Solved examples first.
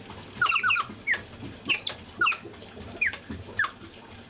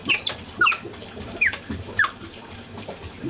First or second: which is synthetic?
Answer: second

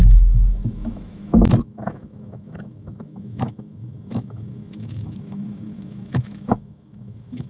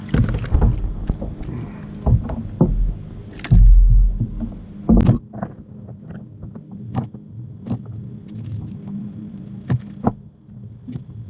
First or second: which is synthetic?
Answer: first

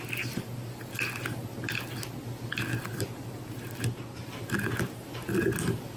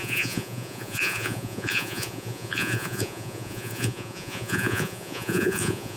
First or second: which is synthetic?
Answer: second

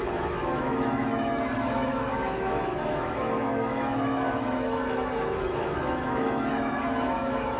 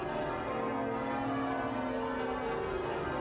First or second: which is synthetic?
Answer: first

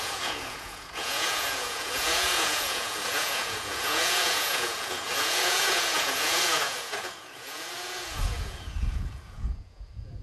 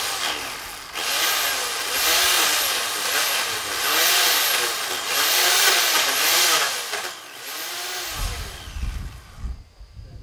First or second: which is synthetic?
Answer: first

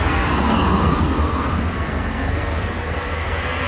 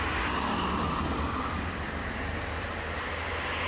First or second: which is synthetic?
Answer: first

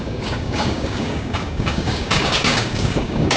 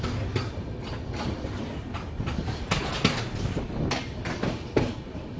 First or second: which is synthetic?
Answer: first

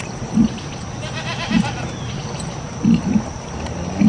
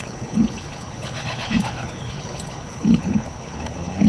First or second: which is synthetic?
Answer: second